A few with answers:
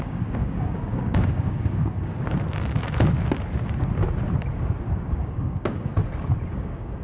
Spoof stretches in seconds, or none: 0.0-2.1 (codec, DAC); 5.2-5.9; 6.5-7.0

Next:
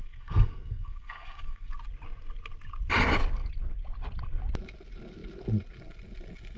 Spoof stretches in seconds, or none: 0.0-1.7 (codec, SNAC)

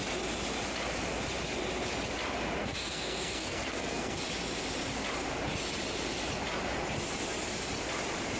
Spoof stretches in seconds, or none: 2.6-4.2 (codec, SNAC)

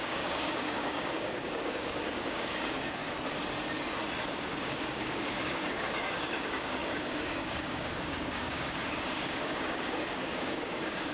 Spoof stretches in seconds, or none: 0.0-3.0 (codec, DAC); 4.3-11.1